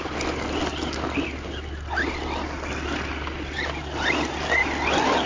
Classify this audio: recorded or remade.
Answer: recorded